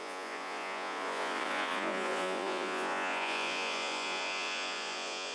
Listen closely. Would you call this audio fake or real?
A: fake